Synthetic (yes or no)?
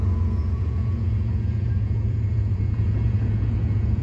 yes